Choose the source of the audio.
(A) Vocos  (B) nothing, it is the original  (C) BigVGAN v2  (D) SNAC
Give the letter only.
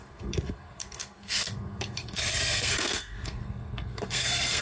D